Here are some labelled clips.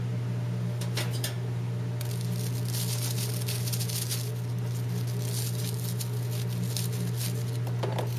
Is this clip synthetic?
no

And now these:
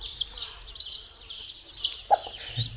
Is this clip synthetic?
no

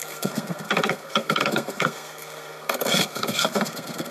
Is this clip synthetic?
yes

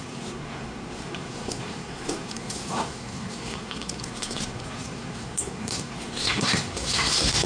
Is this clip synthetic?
yes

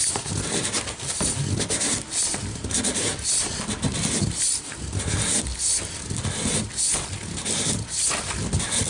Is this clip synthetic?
no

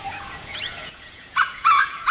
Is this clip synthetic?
yes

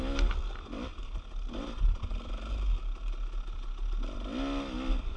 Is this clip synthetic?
no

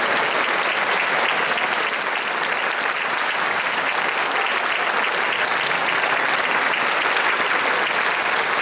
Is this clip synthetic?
no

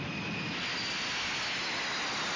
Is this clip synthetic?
no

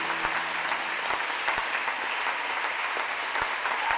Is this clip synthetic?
no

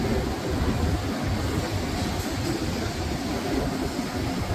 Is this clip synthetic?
no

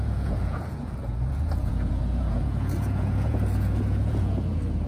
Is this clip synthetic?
yes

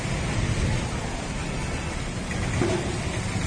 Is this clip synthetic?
no